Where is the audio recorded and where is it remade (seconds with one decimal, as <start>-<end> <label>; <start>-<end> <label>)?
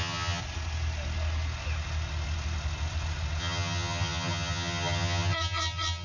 0.0-0.4 remade; 0.4-3.4 recorded; 3.4-6.0 remade